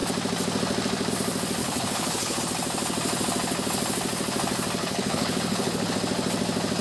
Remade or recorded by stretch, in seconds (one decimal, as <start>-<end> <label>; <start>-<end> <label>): 0.0-1.6 recorded; 1.6-2.4 remade; 2.4-4.8 recorded; 4.8-5.9 remade; 5.9-6.8 recorded